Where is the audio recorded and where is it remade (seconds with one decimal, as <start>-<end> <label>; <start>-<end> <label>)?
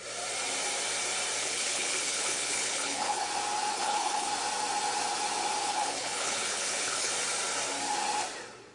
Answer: 0.0-1.4 recorded; 1.4-3.3 remade; 3.3-3.7 recorded; 3.7-4.3 remade; 4.3-5.6 recorded; 5.6-7.1 remade; 7.1-8.7 recorded